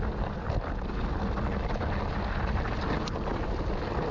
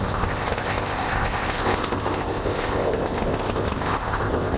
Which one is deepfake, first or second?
second